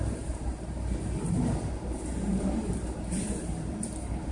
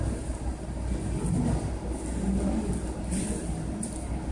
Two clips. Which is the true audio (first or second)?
second